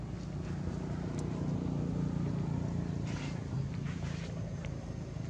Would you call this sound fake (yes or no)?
no